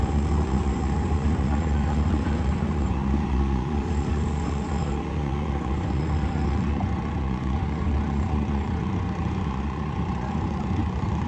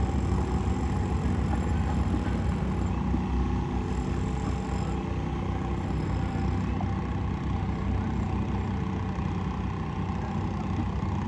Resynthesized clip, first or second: first